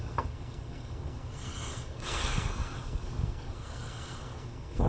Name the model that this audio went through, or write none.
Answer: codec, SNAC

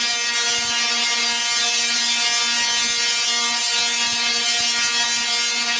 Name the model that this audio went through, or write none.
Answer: none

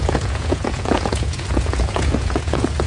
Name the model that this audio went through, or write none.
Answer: vocoder, Vocos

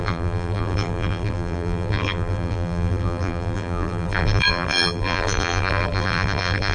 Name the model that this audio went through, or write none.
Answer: vocoder, BigVGAN v2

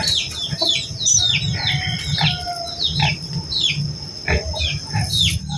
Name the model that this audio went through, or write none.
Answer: none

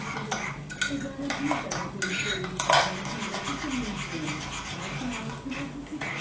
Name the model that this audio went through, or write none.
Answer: none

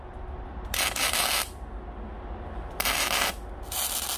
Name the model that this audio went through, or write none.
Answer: none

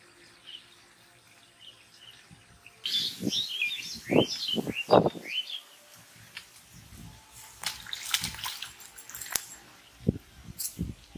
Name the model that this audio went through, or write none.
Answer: none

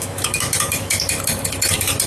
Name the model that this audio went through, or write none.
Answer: autoencoder, DAC-VAE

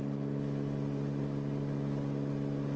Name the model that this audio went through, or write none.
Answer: none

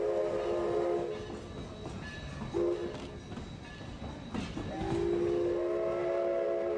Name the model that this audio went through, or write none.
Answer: none